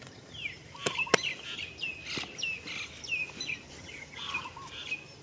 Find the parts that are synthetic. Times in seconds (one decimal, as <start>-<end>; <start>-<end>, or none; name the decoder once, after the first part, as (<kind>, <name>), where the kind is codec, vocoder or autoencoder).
none